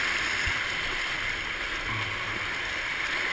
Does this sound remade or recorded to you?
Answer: recorded